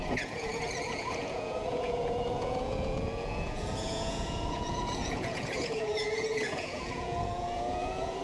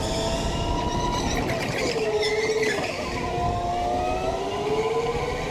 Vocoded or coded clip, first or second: first